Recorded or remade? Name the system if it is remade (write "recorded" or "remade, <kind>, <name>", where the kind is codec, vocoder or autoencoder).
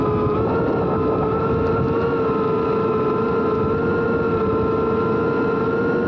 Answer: recorded